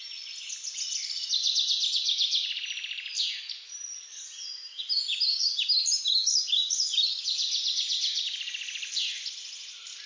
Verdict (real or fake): real